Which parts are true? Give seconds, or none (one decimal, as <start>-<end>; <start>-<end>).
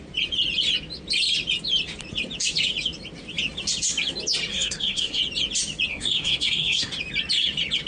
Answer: 0.0-4.5; 5.2-5.9; 6.9-7.9